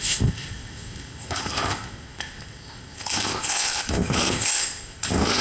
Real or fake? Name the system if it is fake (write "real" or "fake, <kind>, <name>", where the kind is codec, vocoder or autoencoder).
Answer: fake, codec, ZipCodec